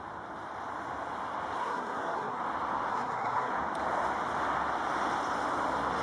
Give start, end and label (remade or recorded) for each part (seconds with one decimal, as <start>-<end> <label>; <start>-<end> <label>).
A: 0.0-1.6 recorded; 1.6-2.4 remade; 2.4-2.9 recorded; 2.9-3.5 remade; 3.5-6.0 recorded

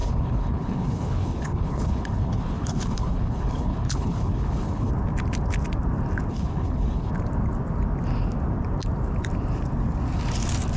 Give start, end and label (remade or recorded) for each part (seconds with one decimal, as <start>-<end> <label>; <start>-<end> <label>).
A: 0.0-4.9 remade; 4.9-6.3 recorded; 6.3-7.1 remade; 7.1-10.8 recorded